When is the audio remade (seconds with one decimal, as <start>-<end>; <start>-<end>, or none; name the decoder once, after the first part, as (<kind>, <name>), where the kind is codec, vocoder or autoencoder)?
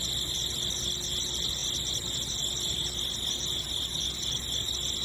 none